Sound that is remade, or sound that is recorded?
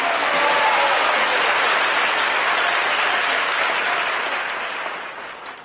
recorded